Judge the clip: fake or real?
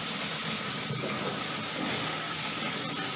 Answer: real